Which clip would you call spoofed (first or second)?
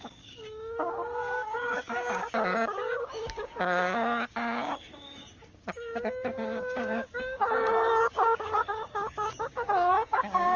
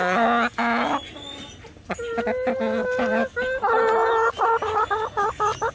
first